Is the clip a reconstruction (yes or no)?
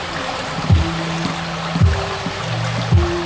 no